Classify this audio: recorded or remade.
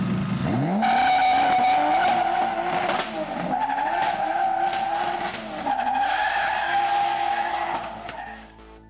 recorded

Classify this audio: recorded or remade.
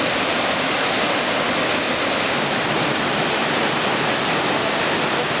recorded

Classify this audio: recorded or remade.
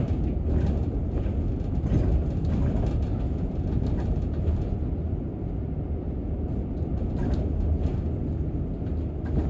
recorded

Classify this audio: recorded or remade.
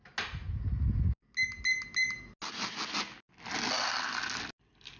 recorded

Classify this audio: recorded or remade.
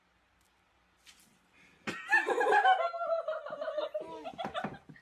recorded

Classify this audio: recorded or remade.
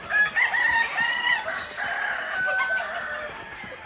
recorded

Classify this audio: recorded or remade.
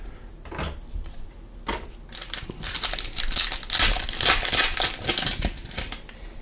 recorded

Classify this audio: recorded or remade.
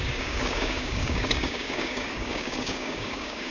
remade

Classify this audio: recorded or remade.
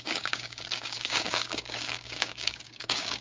remade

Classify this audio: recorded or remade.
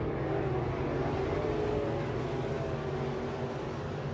recorded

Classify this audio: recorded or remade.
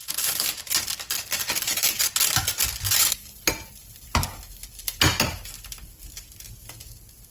recorded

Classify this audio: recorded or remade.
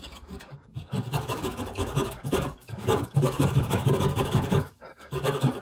remade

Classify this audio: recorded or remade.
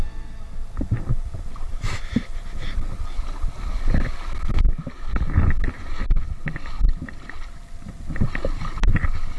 recorded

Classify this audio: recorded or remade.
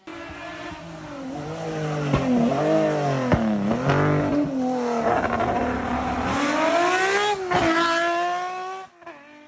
recorded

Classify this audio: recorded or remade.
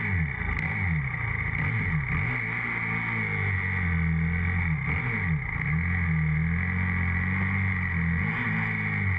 recorded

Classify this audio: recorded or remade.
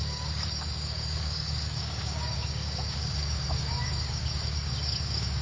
remade